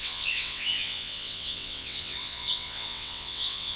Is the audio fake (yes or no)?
yes